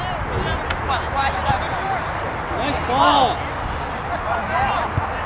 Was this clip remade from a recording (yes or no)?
no